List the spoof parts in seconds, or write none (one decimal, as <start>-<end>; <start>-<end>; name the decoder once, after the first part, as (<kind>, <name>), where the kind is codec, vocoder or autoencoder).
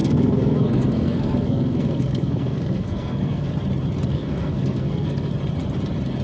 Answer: 0.0-3.5 (codec, SNAC); 4.1-5.3